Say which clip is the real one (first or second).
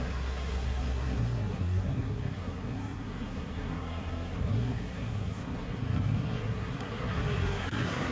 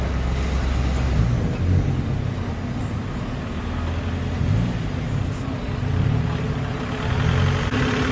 second